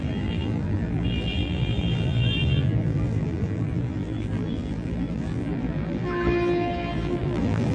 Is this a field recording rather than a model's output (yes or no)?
no